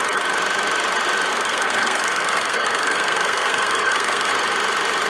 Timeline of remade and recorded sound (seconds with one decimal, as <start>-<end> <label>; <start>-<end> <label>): 0.0-1.3 recorded; 1.3-4.3 remade; 4.3-5.1 recorded